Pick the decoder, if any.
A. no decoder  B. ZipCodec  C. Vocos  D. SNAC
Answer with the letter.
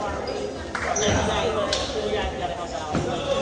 A